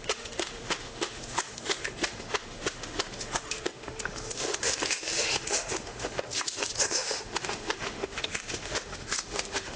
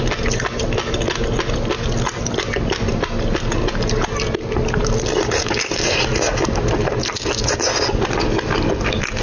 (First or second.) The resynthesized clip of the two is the first